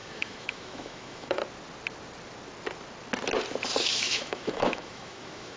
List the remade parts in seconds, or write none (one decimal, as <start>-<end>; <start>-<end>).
0.0-1.4; 3.8-5.6